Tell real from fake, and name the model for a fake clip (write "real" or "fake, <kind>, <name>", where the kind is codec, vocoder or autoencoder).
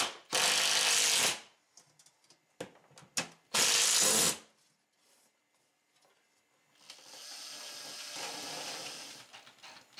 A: real